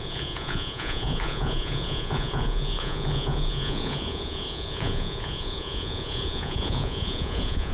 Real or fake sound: fake